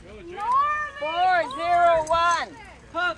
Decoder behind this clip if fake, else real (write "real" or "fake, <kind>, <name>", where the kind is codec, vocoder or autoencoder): real